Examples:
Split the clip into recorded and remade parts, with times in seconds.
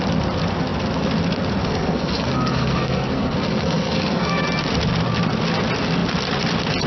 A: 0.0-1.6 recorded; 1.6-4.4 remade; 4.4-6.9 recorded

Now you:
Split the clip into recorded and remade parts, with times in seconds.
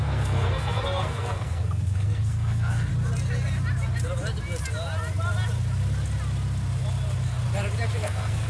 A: 0.0-2.9 remade; 2.9-7.9 recorded; 7.9-8.5 remade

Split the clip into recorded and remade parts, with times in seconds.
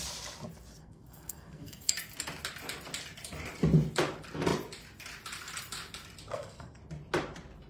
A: 0.0-0.8 recorded; 0.8-1.9 remade; 1.9-6.3 recorded; 6.3-6.8 remade; 6.8-7.7 recorded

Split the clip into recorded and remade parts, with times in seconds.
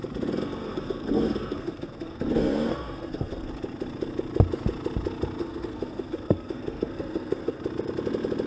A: 0.0-0.6 recorded; 0.6-3.5 remade; 3.5-5.4 recorded; 5.4-7.6 remade; 7.6-8.5 recorded